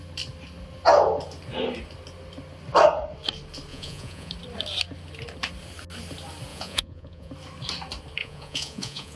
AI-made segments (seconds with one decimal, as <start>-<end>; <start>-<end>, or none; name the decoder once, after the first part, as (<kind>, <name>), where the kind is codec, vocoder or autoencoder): 3.7-4.3 (vocoder, Vocos); 6.5-7.3; 8.2-9.2